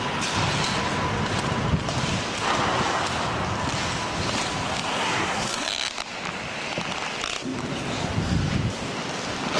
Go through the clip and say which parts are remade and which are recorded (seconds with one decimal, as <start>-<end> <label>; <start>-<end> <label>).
0.0-4.9 recorded; 4.9-5.7 remade; 5.7-9.6 recorded